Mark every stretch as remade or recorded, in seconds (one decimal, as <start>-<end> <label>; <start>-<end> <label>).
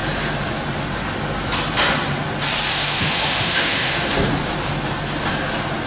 0.0-2.7 recorded; 2.7-4.1 remade; 4.1-5.9 recorded